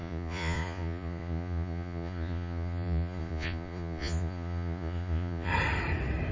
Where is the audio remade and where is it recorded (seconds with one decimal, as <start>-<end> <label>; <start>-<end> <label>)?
0.0-5.5 remade; 5.5-6.3 recorded

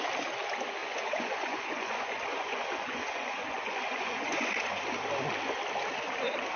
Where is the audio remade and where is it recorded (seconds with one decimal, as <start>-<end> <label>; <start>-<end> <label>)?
0.0-0.8 recorded; 0.8-4.8 remade; 4.8-6.6 recorded

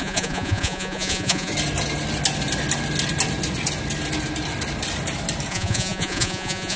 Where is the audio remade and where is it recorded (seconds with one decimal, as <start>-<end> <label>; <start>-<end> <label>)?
0.0-1.5 remade; 1.5-5.5 recorded; 5.5-6.8 remade